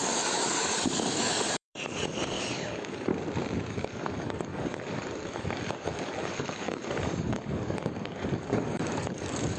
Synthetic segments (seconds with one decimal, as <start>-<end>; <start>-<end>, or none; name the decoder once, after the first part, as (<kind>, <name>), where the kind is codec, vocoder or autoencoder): 0.0-3.1 (codec, DAC); 3.7-9.6